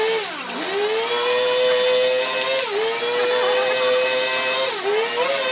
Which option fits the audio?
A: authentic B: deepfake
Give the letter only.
A